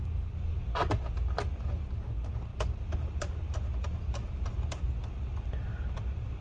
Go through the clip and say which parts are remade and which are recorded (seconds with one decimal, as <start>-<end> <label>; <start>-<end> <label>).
0.0-6.4 recorded